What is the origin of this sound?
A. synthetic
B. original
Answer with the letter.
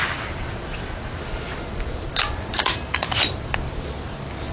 B